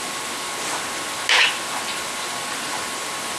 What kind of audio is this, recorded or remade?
recorded